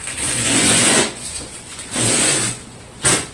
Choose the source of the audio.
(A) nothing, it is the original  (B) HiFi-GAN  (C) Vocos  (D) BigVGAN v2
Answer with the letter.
C